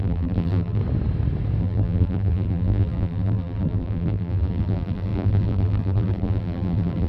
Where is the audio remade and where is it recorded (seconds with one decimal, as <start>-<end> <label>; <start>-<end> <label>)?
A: 0.0-0.8 remade; 0.8-1.6 recorded; 1.6-7.1 remade